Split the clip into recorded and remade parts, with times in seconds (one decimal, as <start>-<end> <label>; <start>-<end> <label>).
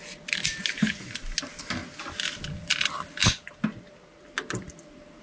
0.0-5.2 recorded